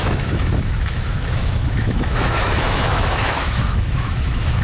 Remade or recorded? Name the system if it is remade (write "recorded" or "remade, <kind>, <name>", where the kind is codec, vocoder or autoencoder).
remade, autoencoder, DAC-VAE